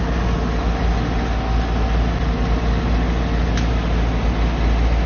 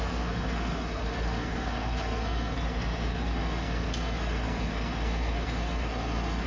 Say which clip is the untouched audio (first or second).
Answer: first